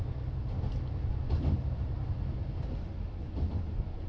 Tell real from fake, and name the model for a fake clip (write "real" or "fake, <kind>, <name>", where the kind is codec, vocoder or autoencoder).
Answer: real